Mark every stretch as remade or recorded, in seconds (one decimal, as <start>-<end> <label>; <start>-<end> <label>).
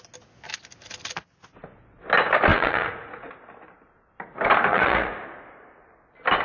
0.0-2.5 recorded; 2.5-3.3 remade; 3.3-4.7 recorded; 4.7-5.2 remade; 5.2-6.4 recorded